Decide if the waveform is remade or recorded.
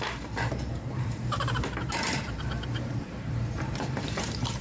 remade